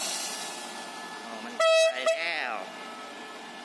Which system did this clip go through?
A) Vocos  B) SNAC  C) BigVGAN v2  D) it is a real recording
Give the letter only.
D